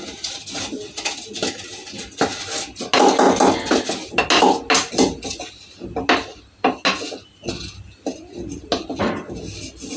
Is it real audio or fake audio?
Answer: real